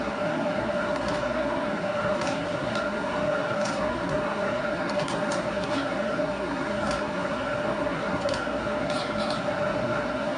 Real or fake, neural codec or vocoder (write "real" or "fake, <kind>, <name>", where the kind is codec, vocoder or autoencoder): fake, codec, SNAC